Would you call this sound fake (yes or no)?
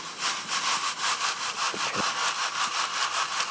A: no